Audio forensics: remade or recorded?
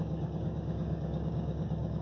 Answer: remade